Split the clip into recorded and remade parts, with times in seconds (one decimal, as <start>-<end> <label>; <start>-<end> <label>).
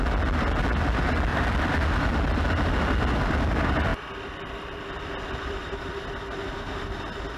0.0-1.3 recorded; 1.3-2.3 remade; 2.3-3.9 recorded; 3.9-5.8 remade; 5.8-7.4 recorded